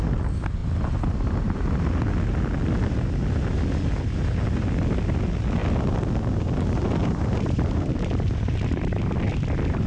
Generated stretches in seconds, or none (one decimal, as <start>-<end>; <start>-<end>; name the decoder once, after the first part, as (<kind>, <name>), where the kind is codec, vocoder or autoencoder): 7.0-9.0 (vocoder, BigVGAN v2)